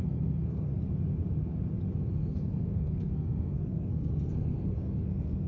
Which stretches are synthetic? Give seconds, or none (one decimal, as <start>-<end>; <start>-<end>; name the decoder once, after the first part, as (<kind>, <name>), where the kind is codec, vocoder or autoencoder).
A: 0.0-0.7 (codec, SNAC); 2.3-5.5